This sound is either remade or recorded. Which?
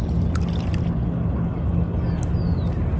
recorded